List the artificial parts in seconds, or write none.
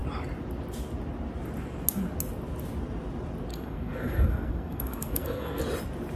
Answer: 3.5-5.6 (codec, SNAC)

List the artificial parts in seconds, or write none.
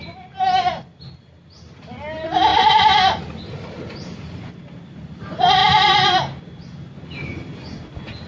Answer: none